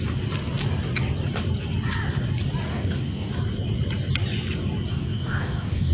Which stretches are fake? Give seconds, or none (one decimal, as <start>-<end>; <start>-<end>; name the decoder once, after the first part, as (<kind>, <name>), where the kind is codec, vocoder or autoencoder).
2.7-3.3 (codec, DAC); 4.9-5.9